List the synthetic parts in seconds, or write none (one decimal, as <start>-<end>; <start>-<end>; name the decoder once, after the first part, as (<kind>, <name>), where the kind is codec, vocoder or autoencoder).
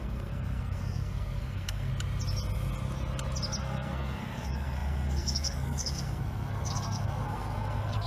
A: 0.0-1.9 (codec, SNAC); 3.6-8.1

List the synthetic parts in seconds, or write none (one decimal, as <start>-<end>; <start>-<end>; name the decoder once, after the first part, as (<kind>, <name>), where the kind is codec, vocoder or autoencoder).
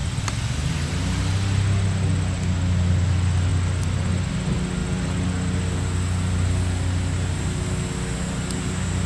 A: none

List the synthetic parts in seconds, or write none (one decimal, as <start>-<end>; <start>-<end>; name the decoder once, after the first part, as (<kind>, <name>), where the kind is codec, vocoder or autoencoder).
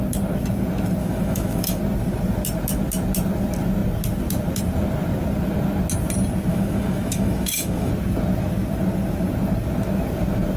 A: 1.0-1.8 (autoencoder, DAC-VAE); 6.5-7.9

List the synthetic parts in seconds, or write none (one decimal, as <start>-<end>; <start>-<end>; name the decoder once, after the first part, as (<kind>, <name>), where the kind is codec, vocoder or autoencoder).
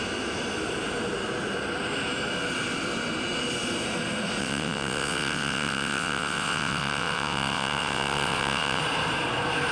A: 4.4-8.8 (vocoder, WaveNeXt)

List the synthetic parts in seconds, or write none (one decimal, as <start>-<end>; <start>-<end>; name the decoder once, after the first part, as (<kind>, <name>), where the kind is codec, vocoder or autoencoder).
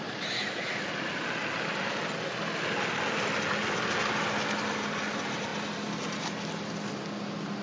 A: none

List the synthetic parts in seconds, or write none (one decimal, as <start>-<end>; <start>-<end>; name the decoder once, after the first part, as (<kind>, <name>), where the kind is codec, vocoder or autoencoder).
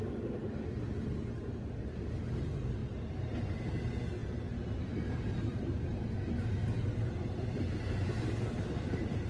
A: none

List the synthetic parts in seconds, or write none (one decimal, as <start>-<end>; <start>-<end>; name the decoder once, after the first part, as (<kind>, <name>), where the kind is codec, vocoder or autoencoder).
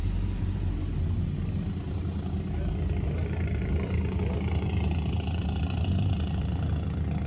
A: 0.0-0.8 (vocoder, BigVGAN v2); 1.8-2.7; 3.2-6.7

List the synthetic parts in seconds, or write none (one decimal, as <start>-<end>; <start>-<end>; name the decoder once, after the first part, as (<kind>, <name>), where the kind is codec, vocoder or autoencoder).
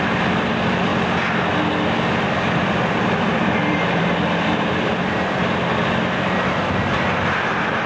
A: 0.0-0.9 (vocoder, BigVGAN v2); 2.9-7.9